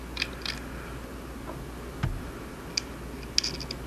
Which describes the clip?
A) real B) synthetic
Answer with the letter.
A